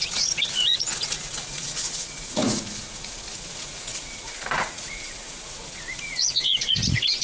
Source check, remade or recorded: remade